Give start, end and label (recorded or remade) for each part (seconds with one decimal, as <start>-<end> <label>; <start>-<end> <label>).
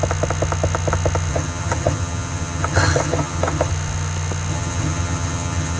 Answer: 0.0-1.3 recorded; 1.3-3.7 remade; 3.7-4.5 recorded; 4.5-5.8 remade